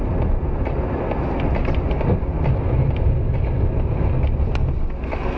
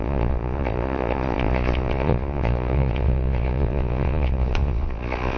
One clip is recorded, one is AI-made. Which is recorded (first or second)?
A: first